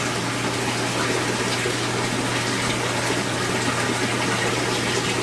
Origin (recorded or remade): recorded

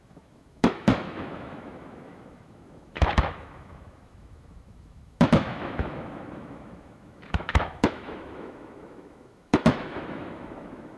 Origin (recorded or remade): remade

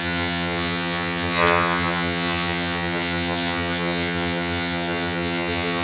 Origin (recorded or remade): remade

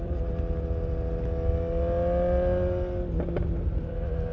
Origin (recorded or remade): recorded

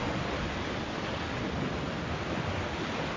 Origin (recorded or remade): recorded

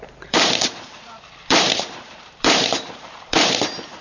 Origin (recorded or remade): remade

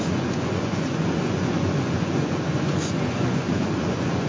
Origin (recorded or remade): remade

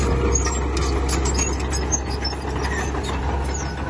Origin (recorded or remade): recorded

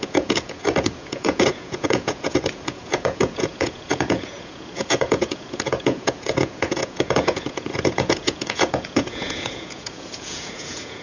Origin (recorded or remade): remade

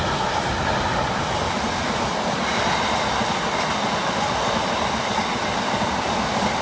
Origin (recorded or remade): recorded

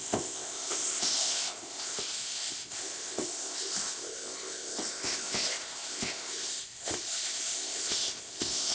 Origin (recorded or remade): remade